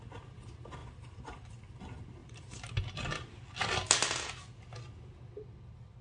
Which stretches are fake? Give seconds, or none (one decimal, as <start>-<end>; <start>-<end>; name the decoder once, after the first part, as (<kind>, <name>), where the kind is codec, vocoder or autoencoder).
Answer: 0.8-1.5 (vocoder, BigVGAN v2); 2.2-2.8